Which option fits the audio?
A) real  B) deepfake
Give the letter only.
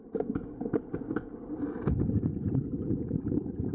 A